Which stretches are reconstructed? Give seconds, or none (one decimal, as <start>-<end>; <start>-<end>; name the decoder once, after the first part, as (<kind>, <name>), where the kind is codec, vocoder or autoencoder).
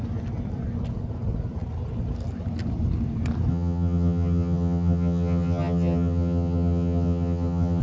3.5-7.8 (vocoder, HiFi-GAN)